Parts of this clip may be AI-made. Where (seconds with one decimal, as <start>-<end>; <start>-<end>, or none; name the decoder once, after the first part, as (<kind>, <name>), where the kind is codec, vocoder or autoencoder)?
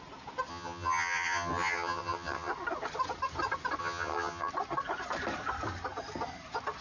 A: 0.5-2.5 (vocoder, HiFi-GAN); 3.8-4.5